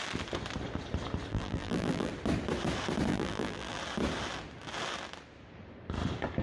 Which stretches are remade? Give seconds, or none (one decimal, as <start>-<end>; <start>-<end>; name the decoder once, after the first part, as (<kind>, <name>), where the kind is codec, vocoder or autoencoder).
1.3-2.1 (vocoder, BigVGAN v2); 3.1-3.8